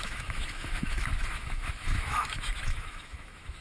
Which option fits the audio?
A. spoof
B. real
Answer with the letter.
A